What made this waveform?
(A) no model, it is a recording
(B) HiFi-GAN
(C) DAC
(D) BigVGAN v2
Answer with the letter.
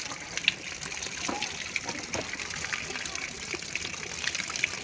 A